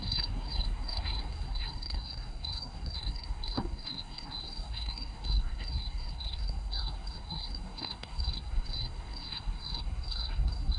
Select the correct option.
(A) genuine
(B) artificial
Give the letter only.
B